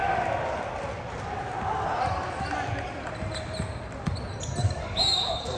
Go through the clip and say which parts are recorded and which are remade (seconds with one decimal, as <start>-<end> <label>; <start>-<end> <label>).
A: 0.0-4.6 recorded; 4.6-5.6 remade